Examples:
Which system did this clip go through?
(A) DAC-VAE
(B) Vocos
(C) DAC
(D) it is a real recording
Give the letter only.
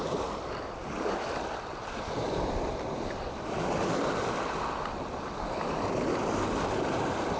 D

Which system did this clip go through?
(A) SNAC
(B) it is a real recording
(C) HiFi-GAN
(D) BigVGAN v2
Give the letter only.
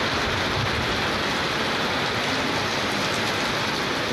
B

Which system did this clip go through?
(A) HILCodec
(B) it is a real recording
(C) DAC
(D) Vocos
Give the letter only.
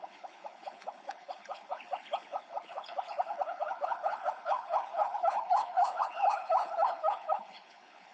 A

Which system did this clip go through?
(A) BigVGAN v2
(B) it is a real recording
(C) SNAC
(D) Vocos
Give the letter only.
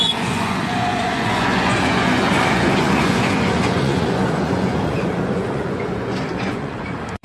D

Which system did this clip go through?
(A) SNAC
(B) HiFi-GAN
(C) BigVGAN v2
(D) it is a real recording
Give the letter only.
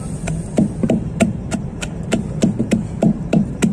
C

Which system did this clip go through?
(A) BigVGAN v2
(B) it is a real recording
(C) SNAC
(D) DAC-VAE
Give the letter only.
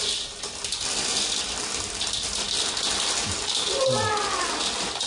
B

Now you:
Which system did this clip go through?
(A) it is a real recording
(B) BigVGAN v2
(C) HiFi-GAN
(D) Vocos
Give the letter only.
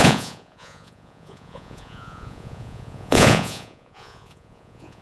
D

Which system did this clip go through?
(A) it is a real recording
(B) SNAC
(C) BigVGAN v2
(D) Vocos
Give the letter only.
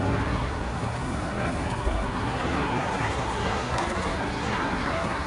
B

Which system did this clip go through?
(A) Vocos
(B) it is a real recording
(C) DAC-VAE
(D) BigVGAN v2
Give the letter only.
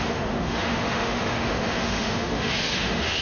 C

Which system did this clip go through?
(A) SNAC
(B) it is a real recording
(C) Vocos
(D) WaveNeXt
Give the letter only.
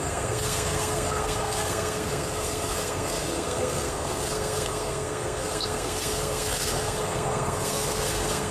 A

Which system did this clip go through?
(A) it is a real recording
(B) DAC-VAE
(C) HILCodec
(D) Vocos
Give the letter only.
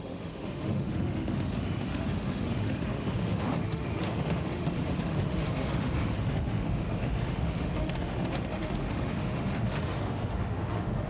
B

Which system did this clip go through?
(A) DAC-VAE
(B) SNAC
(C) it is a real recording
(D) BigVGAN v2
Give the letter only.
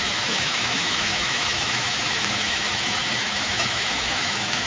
A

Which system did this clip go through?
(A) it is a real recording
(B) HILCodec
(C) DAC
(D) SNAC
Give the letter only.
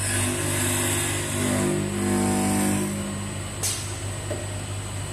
A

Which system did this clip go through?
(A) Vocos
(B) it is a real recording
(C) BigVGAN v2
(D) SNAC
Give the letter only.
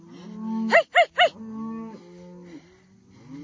B